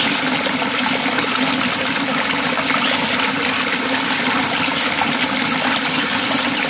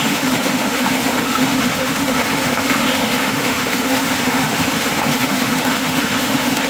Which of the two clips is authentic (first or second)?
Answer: first